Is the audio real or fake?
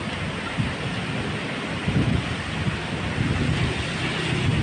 real